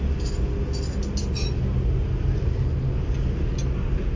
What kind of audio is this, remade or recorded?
recorded